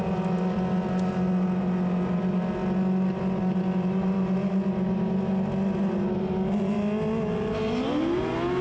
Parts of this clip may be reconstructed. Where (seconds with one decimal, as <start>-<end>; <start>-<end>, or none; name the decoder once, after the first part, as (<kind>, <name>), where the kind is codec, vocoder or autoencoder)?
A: none